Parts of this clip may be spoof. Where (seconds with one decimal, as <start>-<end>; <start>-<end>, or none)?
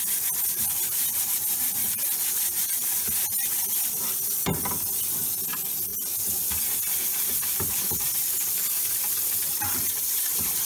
none